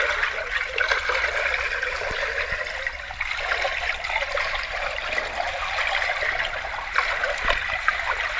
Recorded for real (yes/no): yes